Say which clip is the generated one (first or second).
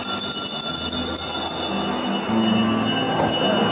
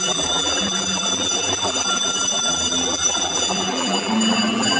second